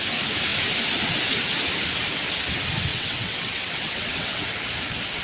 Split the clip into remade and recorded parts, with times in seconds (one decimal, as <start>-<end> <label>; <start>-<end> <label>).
0.0-2.9 recorded; 2.9-4.4 remade; 4.4-5.2 recorded